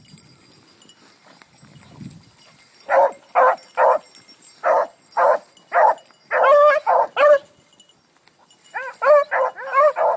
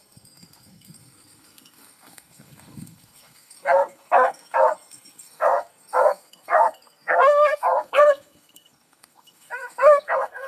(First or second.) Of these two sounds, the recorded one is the first